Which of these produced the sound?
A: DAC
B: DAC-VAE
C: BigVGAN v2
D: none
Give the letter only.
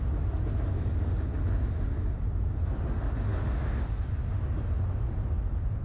D